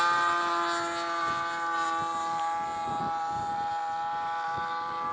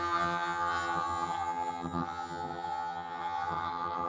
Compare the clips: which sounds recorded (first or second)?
first